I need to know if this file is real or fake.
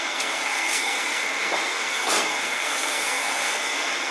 fake